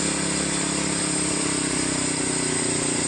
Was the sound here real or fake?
real